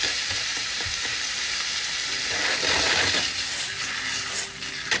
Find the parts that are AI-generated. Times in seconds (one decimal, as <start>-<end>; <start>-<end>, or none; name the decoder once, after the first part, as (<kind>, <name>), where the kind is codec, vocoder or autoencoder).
0.5-2.1 (vocoder, BigVGAN v2)